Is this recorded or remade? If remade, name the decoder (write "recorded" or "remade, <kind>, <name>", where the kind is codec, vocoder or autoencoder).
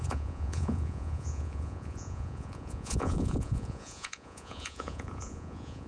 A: remade, vocoder, Vocos